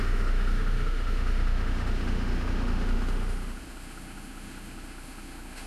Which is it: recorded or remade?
remade